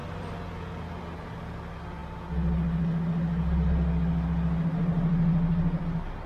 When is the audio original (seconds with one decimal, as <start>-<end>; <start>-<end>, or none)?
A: 0.0-6.3